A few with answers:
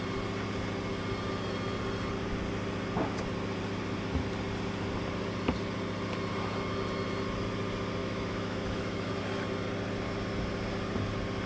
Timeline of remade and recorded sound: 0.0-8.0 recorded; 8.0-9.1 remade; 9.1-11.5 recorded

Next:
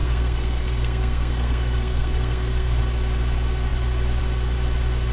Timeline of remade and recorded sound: 0.0-2.8 remade; 2.8-5.1 recorded

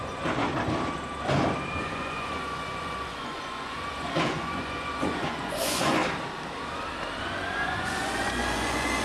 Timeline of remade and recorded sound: 0.0-0.5 remade; 0.5-1.8 recorded; 1.8-6.0 remade; 6.0-7.2 recorded; 7.2-9.0 remade

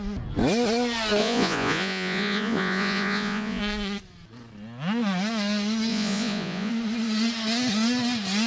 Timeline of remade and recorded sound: 0.0-1.2 recorded; 1.2-3.6 remade; 3.6-5.9 recorded; 5.9-6.7 remade; 6.7-8.5 recorded

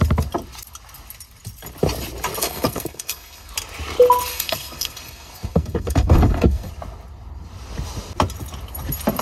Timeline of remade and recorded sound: 0.0-2.4 recorded; 2.4-3.5 remade; 3.5-4.3 recorded; 4.3-6.7 remade; 6.7-9.2 recorded

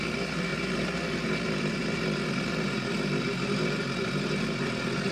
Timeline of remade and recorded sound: 0.0-5.1 recorded

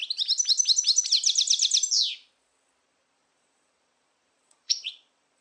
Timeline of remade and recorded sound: 0.0-2.8 recorded; 2.8-5.4 remade